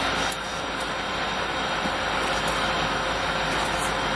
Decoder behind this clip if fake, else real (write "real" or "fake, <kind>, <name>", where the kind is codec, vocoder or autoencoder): real